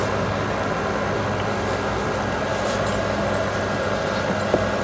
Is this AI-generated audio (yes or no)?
no